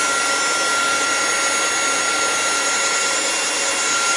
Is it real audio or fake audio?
real